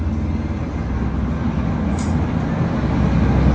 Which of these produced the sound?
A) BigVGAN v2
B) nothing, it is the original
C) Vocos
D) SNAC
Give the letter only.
B